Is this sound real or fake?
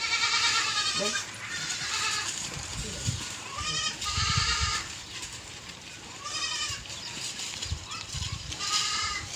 fake